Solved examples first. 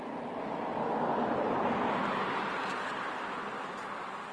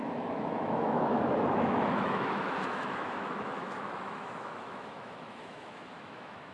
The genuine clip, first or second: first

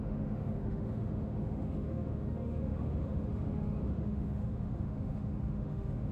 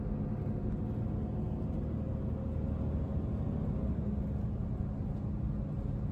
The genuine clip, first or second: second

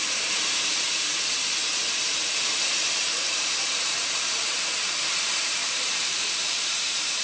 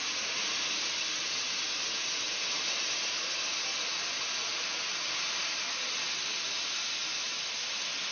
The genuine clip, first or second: second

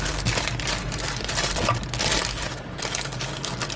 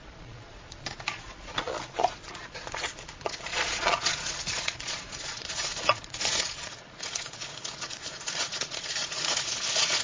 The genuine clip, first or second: first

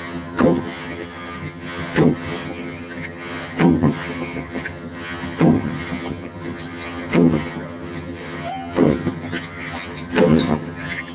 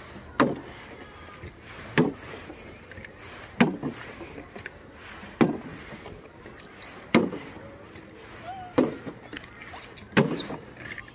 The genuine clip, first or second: second